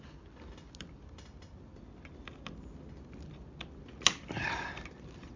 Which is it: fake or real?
real